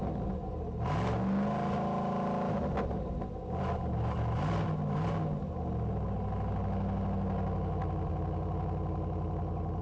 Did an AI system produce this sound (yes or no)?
no